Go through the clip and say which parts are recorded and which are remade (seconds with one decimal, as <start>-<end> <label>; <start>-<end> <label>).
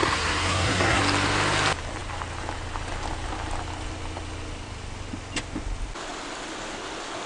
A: 0.0-1.0 remade; 1.0-7.3 recorded